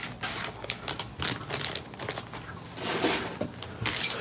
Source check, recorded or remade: recorded